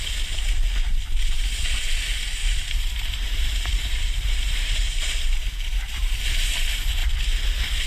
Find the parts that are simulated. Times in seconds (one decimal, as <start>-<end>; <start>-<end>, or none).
2.4-6.5